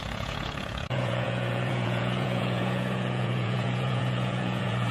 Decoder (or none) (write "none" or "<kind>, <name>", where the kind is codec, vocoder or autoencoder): vocoder, Vocos